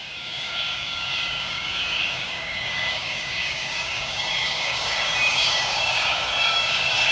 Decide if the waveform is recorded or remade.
remade